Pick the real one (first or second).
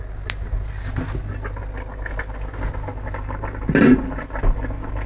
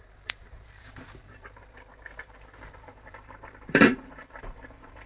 first